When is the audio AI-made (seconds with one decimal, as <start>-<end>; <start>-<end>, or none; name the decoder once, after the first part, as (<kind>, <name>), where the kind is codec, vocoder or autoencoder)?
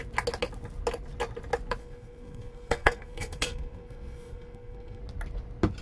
1.8-5.0 (codec, SNAC)